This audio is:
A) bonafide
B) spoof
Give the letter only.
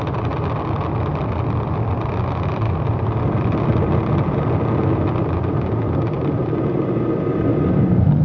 A